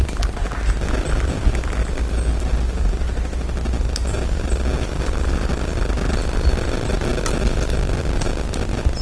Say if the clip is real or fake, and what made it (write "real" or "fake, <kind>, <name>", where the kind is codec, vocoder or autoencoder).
real